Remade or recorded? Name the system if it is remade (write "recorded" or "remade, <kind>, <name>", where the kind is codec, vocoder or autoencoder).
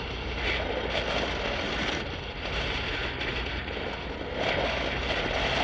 recorded